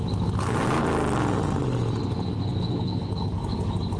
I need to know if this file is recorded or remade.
recorded